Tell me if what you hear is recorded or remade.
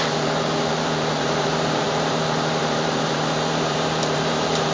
remade